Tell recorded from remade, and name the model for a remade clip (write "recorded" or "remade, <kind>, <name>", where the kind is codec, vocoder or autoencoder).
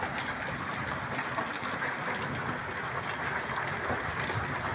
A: recorded